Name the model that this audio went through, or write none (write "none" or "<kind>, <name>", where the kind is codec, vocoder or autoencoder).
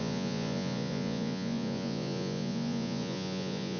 vocoder, Vocos